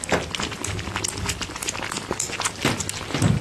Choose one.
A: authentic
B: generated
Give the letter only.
A